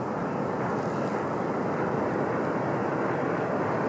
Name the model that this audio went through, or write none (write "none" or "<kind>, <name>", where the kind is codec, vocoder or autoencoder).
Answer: none